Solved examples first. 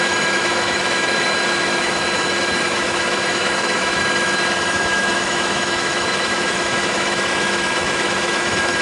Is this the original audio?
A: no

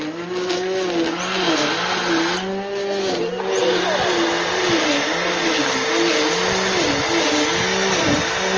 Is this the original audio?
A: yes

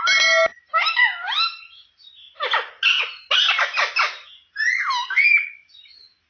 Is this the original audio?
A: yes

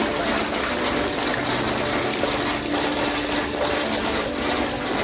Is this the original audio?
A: yes